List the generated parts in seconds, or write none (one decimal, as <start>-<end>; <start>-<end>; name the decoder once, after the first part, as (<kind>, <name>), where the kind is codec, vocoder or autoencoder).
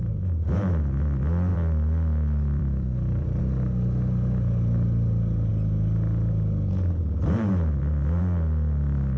1.5-3.4 (vocoder, BigVGAN v2)